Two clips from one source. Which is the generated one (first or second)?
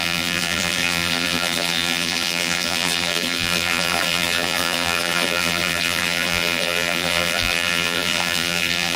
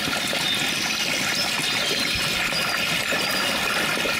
first